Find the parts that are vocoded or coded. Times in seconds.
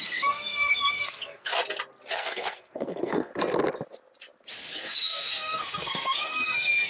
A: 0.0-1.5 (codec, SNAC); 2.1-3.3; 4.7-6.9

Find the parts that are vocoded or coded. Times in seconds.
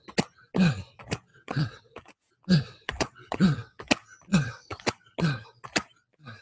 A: 1.3-3.9 (vocoder, WaveNeXt); 4.3-4.9